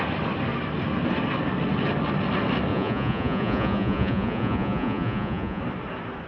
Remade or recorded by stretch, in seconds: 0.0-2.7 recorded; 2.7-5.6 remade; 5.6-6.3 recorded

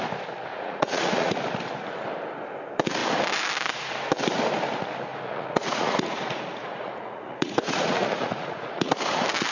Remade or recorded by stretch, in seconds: 0.0-0.5 recorded; 0.5-1.4 remade; 1.4-5.1 recorded; 5.1-9.0 remade; 9.0-9.5 recorded